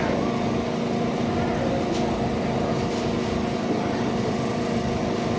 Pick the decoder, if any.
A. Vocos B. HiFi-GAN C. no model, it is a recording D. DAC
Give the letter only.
C